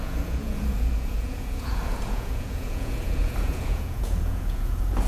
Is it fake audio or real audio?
fake